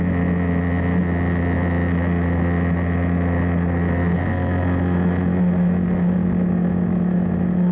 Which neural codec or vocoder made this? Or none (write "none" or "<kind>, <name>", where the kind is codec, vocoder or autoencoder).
none